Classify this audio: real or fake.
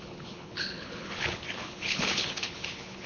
fake